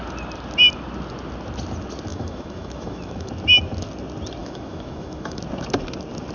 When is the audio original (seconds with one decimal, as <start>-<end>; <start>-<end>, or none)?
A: 0.0-2.1; 3.3-4.4; 5.4-6.3